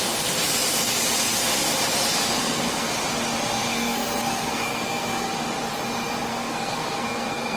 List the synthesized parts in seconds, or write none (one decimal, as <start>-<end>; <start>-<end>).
2.4-2.9; 3.7-5.3; 6.3-7.6